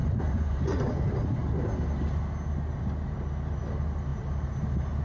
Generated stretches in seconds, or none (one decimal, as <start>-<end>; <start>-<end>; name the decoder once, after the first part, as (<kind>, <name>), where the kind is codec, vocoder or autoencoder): 0.0-0.9 (vocoder, Vocos)

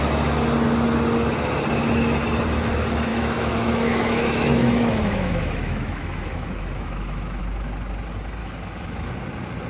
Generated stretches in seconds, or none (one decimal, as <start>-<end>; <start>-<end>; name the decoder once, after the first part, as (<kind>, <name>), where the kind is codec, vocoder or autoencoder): 3.1-7.4 (autoencoder, DAC-VAE); 8.4-9.1